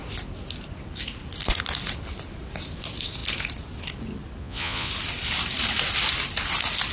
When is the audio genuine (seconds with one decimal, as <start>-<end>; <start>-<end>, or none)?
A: 0.0-4.4; 4.9-6.9